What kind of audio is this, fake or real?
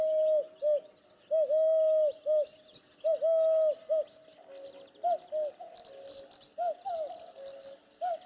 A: real